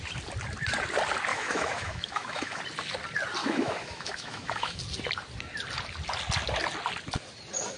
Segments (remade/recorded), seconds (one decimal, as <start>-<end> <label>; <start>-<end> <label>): 0.0-1.3 recorded; 1.3-2.6 remade; 2.6-3.4 recorded; 3.4-4.8 remade; 4.8-7.8 recorded